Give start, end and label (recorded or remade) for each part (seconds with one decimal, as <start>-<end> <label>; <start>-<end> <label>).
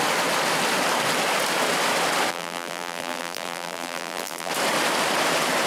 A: 0.0-2.3 recorded; 2.3-4.5 remade; 4.5-5.7 recorded